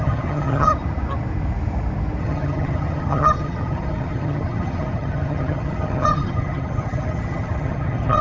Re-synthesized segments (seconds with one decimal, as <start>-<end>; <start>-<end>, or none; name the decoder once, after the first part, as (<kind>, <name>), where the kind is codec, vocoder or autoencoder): 0.0-0.7 (vocoder, HiFi-GAN); 2.2-8.2